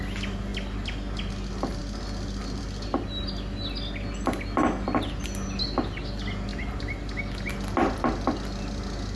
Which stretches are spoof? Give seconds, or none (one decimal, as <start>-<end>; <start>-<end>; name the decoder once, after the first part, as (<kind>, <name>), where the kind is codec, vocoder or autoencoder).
none